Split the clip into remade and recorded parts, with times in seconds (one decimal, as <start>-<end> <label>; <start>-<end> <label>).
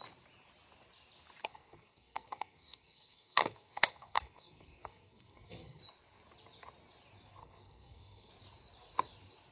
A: 0.0-1.4 recorded; 1.4-5.8 remade; 5.8-7.4 recorded; 7.4-8.3 remade; 8.3-9.5 recorded